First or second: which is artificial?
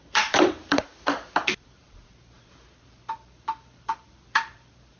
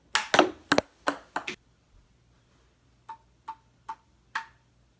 first